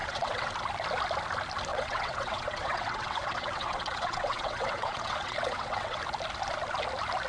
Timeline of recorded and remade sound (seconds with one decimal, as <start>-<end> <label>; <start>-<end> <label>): 0.0-0.5 remade; 0.5-1.7 recorded; 1.7-6.0 remade; 6.0-7.3 recorded